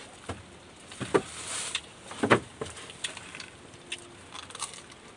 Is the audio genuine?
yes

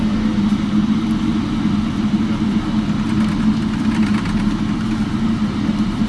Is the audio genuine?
yes